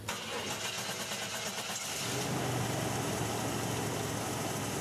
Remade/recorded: recorded